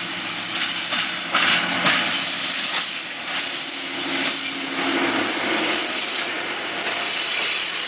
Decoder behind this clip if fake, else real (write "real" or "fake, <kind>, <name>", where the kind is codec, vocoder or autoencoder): real